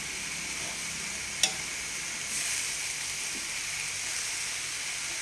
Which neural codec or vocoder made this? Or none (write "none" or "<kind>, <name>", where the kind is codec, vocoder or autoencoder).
none